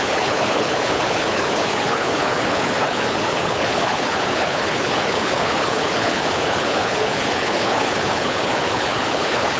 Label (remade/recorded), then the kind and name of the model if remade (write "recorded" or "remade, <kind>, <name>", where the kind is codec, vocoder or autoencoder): remade, codec, HILCodec